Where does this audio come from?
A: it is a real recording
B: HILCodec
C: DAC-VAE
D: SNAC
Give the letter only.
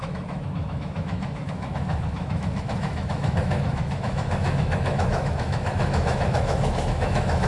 C